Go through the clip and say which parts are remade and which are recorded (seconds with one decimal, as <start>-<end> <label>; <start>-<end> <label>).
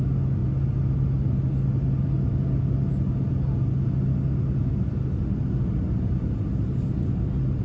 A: 0.0-7.6 recorded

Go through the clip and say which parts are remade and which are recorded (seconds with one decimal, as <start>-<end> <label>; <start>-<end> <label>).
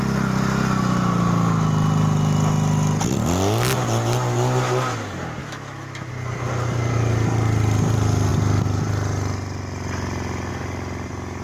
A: 0.0-5.4 recorded; 5.4-6.1 remade; 6.1-11.4 recorded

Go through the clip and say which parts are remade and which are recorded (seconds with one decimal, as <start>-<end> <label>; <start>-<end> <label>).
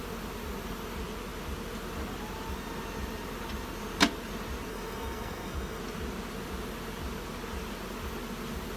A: 0.0-4.7 recorded; 4.7-5.8 remade; 5.8-8.8 recorded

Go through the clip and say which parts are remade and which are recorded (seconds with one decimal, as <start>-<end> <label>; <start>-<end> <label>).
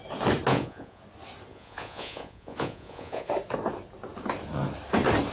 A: 0.0-0.5 recorded; 0.5-1.0 remade; 1.0-1.5 recorded; 1.5-3.3 remade; 3.3-5.3 recorded